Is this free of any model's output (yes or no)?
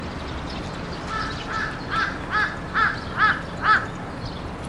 yes